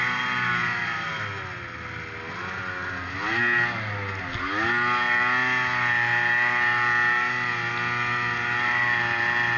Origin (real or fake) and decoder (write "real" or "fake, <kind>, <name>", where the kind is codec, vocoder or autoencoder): real